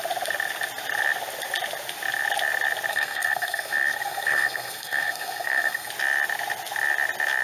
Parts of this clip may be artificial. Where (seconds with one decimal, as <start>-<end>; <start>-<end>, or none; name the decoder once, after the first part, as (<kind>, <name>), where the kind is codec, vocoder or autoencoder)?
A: 2.9-5.9 (codec, SNAC)